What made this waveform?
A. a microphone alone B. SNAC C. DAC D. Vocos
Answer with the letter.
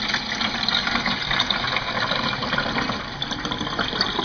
A